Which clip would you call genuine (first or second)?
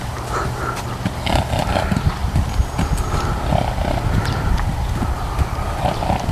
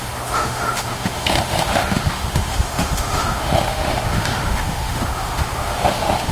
first